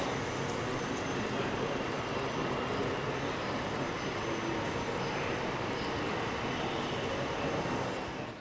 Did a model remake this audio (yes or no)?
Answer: no